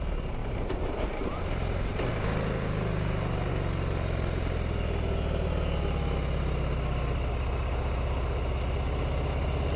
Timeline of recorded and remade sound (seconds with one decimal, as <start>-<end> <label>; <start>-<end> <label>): 0.0-0.4 recorded; 0.4-3.5 remade; 3.5-9.8 recorded